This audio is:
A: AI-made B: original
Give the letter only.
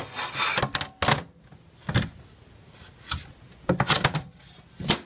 B